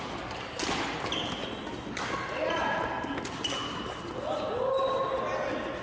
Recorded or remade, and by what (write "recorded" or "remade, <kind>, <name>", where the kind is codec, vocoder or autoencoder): recorded